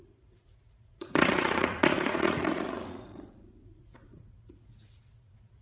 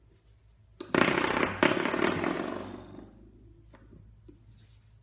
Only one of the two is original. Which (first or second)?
second